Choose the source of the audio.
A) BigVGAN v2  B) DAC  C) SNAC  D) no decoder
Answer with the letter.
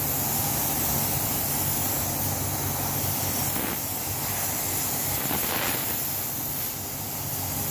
D